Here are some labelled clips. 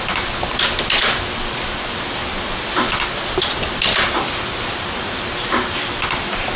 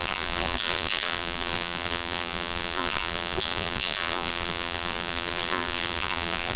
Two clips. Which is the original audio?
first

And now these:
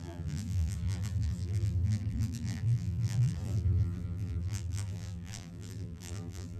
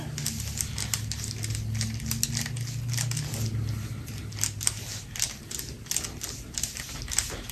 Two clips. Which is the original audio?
second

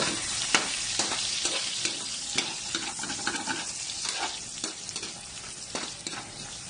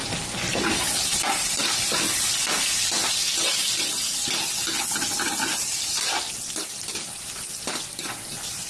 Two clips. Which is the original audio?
second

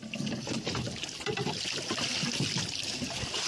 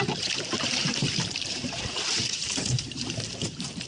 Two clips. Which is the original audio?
first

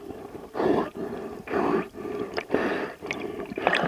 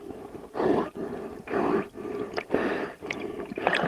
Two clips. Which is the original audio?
second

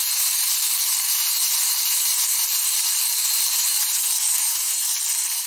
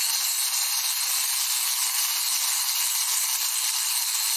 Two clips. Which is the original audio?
second